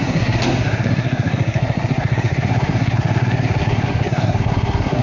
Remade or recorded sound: remade